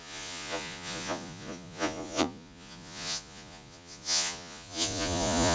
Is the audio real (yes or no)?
no